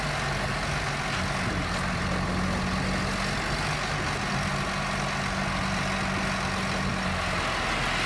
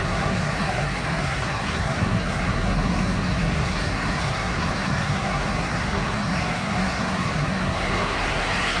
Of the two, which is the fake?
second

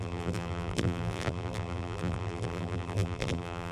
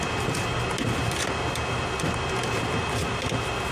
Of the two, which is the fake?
first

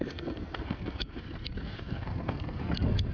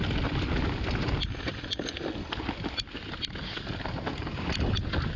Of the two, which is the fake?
first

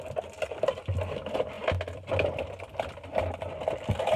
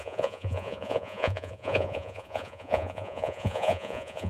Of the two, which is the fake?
second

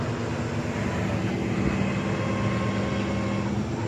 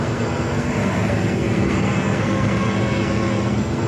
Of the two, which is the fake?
second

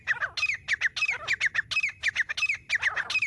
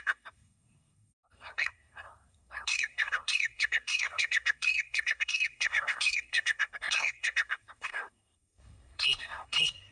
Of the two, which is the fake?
second